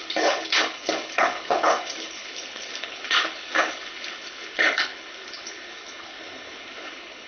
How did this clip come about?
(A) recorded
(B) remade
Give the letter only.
B